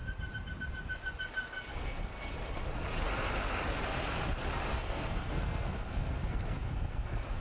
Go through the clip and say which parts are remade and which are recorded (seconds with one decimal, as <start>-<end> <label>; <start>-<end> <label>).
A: 0.0-1.7 recorded; 1.7-2.1 remade; 2.1-4.8 recorded; 4.8-7.4 remade